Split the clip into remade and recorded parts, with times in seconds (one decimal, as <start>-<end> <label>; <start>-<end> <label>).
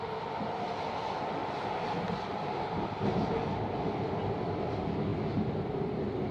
0.0-1.4 recorded; 1.4-3.6 remade; 3.6-5.1 recorded; 5.1-5.8 remade; 5.8-6.3 recorded